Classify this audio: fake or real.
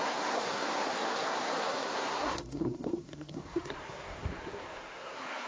fake